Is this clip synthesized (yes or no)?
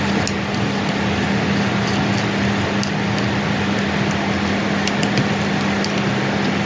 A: no